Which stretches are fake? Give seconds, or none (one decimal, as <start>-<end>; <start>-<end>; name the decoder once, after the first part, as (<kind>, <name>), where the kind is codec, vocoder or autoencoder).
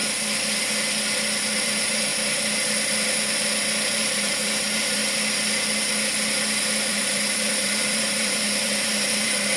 1.6-2.1 (vocoder, BigVGAN v2); 4.0-5.0; 6.9-9.6